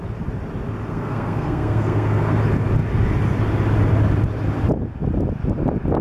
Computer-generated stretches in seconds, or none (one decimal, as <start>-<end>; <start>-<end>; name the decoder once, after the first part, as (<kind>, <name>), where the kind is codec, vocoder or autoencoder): 0.9-2.4 (codec, SNAC)

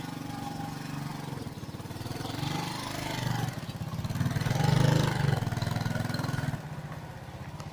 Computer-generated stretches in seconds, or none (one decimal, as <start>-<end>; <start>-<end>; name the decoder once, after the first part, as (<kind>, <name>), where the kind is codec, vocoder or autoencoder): none

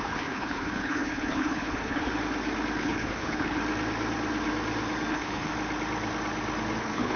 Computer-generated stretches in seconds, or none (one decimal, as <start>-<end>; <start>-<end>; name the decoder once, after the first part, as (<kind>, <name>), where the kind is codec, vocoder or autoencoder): 0.0-2.1 (codec, HILCodec); 2.8-3.6; 5.1-5.5; 6.8-7.2

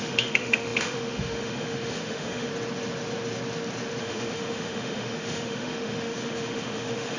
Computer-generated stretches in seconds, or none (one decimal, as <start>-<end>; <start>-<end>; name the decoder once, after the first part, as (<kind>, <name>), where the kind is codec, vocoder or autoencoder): 0.0-2.5 (autoencoder, DAC-VAE); 4.0-7.2